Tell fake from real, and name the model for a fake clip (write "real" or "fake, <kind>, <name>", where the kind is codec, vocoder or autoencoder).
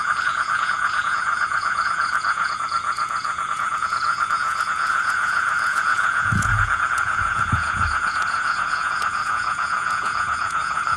fake, vocoder, Vocos